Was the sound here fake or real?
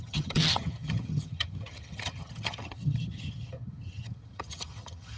fake